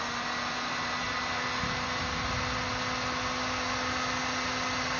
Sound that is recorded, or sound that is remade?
recorded